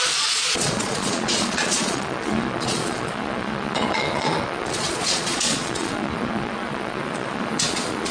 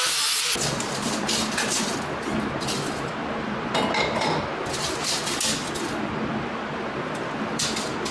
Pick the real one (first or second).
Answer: second